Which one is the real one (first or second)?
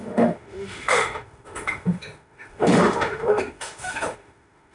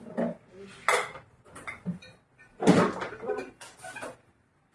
second